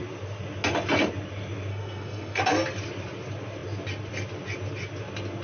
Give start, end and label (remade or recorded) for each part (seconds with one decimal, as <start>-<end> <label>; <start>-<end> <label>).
0.0-1.7 recorded; 1.7-2.4 remade; 2.4-5.4 recorded